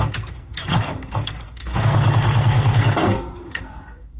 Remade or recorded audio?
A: remade